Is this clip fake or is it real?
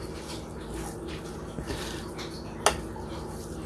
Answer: real